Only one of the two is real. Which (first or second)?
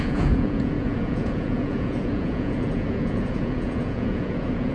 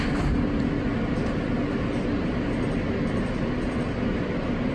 second